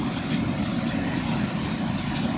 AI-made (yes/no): no